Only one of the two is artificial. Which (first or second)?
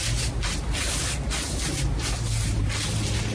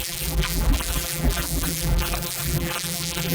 second